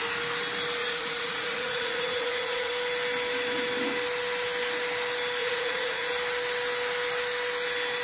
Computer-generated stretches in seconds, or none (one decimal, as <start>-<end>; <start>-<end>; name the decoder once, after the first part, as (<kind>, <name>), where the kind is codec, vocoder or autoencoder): 0.8-2.7 (vocoder, Vocos); 5.4-6.1